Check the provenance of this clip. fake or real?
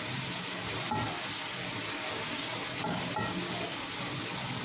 real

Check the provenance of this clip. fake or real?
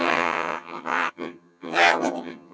fake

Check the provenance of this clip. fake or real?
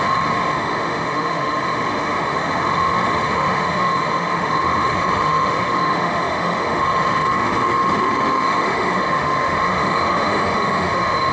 fake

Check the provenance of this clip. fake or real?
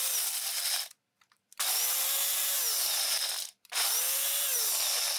real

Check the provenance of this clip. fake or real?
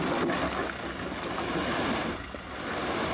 real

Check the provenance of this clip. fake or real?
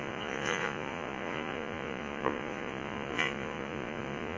fake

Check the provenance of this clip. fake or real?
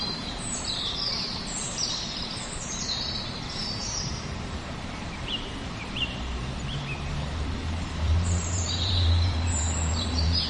fake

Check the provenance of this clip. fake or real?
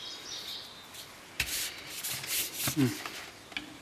real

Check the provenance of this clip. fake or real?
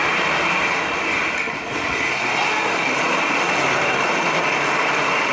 real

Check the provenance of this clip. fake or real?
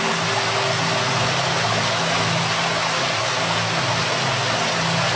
real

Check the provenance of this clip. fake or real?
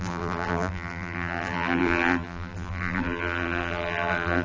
fake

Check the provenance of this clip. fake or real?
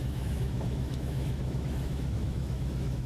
fake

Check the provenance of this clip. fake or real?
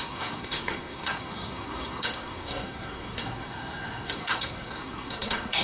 fake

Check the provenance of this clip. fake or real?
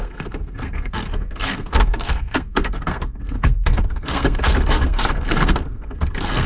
fake